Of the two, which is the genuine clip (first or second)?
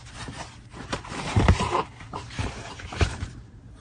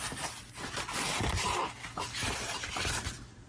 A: second